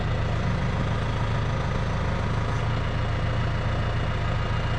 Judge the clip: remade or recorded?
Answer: recorded